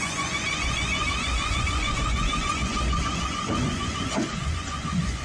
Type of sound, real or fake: fake